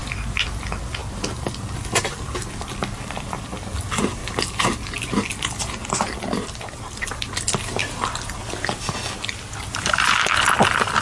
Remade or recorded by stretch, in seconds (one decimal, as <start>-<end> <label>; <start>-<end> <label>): 0.0-11.0 recorded